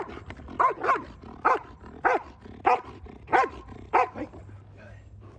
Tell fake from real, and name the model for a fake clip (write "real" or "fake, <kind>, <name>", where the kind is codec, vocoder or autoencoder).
real